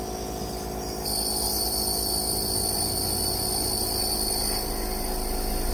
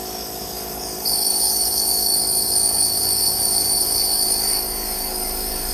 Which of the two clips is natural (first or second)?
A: first